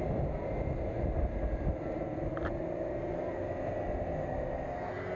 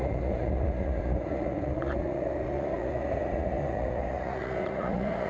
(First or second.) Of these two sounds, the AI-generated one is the second